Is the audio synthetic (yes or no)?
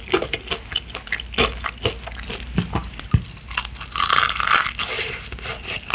no